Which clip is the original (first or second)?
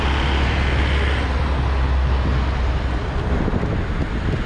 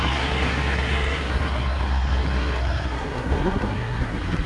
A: first